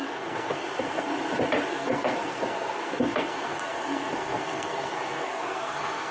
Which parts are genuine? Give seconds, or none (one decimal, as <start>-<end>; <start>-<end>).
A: 1.1-1.7